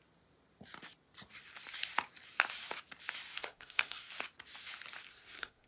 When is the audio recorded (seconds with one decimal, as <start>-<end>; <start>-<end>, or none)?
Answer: 0.0-3.4; 4.1-5.1